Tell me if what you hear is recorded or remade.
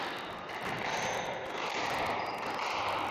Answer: recorded